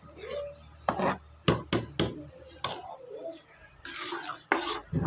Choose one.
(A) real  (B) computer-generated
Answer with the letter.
A